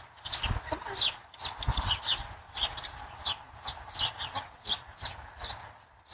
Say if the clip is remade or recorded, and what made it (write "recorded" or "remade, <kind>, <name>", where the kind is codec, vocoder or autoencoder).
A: recorded